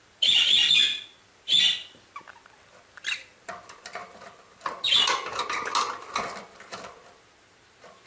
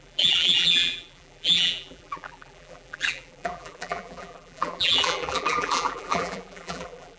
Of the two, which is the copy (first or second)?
second